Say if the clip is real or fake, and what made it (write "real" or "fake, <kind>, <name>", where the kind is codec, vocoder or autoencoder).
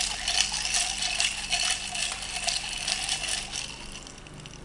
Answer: real